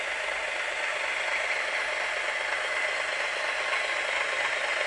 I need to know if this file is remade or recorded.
recorded